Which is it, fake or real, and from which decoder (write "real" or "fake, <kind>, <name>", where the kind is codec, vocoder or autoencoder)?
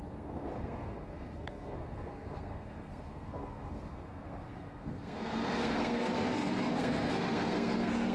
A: fake, codec, SNAC